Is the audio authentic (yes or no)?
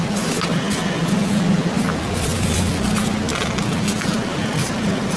yes